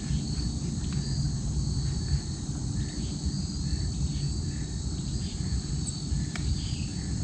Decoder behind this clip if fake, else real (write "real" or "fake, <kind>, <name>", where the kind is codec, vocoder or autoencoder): real